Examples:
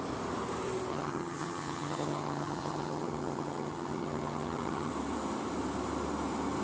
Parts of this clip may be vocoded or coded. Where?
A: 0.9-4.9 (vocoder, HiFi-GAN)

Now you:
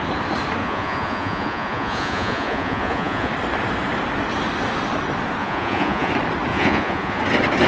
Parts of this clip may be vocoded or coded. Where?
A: 0.6-3.3 (vocoder, Vocos); 5.4-6.1; 6.5-7.2

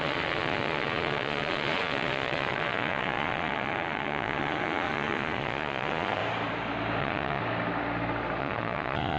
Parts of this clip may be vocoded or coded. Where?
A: 0.0-6.2 (vocoder, Vocos); 7.0-7.4; 8.4-9.2